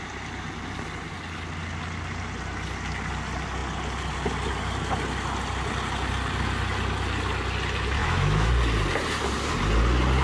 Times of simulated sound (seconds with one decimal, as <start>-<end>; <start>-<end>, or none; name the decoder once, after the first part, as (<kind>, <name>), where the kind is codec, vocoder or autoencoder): 8.0-8.5 (autoencoder, DAC-VAE)